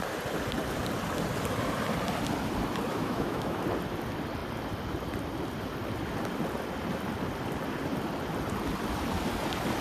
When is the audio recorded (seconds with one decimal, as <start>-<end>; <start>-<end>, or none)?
0.0-2.9; 3.6-9.8